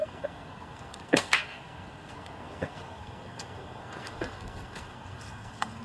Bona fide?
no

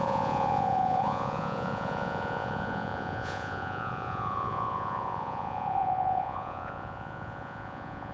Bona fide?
no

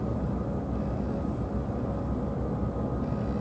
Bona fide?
yes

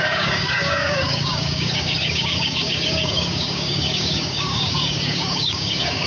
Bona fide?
no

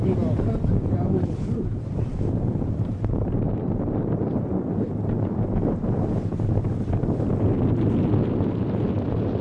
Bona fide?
yes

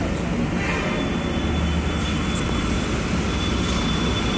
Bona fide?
yes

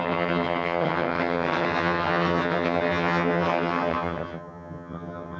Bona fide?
no